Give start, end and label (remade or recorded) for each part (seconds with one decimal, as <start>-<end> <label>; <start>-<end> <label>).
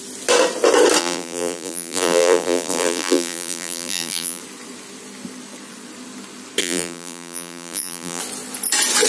0.0-1.0 recorded; 1.0-4.4 remade; 4.4-6.6 recorded; 6.6-8.2 remade; 8.2-9.1 recorded